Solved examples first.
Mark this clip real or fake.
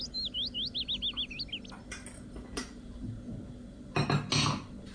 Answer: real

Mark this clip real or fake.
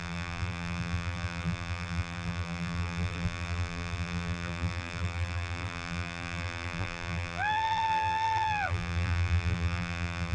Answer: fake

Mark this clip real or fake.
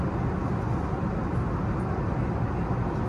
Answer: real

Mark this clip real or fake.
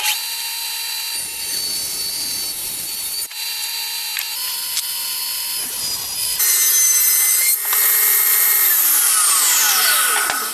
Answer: real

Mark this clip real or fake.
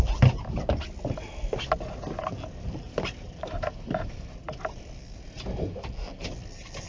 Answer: real